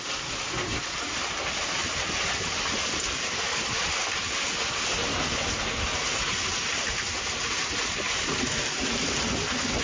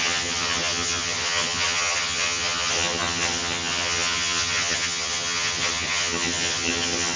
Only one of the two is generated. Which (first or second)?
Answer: second